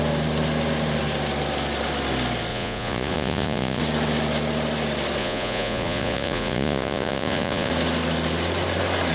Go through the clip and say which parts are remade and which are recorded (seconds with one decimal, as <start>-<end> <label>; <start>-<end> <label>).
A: 0.0-2.5 recorded; 2.5-3.8 remade; 3.8-5.2 recorded; 5.2-7.7 remade; 7.7-9.1 recorded